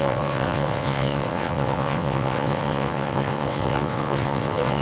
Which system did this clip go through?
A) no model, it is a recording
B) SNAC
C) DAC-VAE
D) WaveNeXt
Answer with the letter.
D